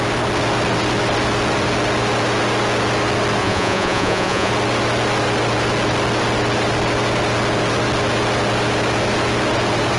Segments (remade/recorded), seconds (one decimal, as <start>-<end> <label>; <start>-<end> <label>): 0.0-3.4 recorded; 3.4-4.5 remade; 4.5-10.0 recorded